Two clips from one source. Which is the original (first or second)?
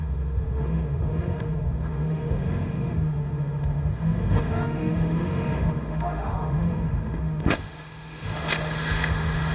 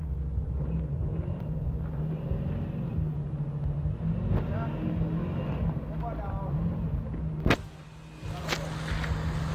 second